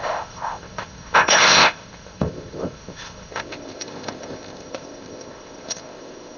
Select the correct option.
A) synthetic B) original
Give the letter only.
A